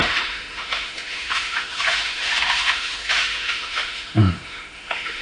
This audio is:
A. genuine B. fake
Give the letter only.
B